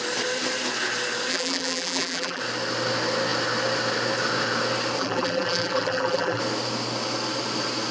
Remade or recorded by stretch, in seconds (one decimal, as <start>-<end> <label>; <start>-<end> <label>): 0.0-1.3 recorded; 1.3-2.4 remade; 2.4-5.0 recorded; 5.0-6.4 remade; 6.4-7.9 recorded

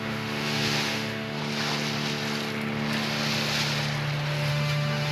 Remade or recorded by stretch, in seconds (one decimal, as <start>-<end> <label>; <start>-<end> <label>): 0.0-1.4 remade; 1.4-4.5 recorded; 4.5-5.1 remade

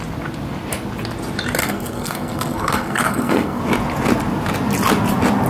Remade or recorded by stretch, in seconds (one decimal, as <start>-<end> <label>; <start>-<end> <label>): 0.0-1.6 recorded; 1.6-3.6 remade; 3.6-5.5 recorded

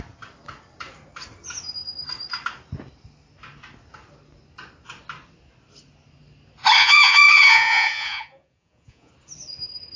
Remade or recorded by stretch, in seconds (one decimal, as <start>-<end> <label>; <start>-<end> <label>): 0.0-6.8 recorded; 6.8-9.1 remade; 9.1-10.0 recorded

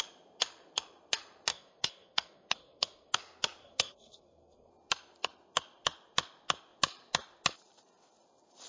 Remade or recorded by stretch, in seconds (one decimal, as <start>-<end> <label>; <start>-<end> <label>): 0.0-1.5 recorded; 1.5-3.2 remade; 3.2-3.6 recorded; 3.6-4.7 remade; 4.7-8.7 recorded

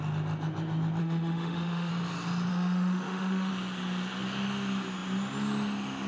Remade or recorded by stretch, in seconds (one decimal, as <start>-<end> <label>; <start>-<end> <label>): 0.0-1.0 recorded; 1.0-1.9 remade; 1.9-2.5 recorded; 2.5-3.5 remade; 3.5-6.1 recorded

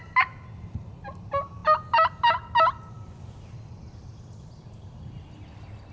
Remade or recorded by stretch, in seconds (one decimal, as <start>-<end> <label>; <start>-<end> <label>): 0.0-5.9 recorded

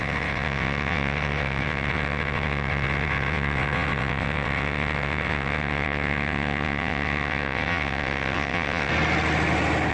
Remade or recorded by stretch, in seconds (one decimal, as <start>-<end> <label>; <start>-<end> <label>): 0.0-8.9 remade; 8.9-9.9 recorded